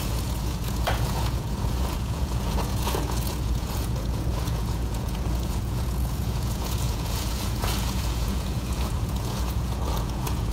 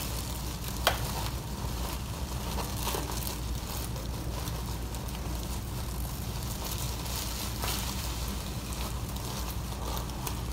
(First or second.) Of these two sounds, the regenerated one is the first